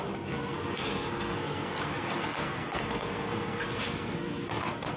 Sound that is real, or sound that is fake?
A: fake